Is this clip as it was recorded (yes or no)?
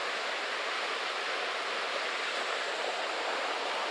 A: yes